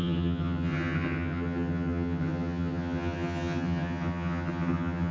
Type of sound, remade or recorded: remade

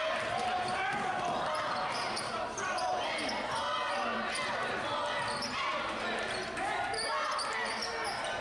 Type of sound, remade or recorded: recorded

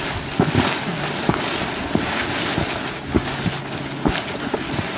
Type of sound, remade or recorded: recorded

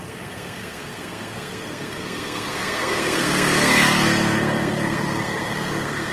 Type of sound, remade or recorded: remade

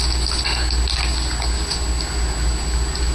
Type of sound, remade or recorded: recorded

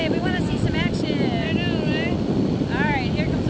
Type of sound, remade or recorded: recorded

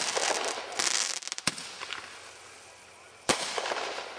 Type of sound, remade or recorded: recorded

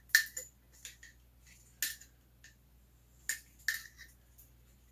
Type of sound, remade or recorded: recorded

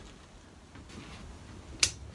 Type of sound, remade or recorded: recorded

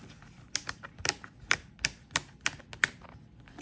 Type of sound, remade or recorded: recorded